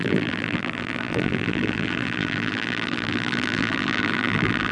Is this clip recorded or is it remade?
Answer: remade